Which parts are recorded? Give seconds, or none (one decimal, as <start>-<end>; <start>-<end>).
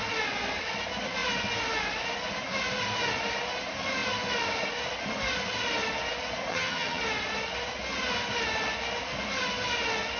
0.0-6.5; 7.0-10.2